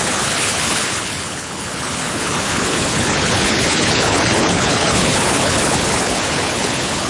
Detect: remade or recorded remade